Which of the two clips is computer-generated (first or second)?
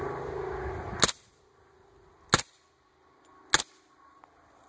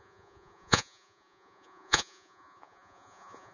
second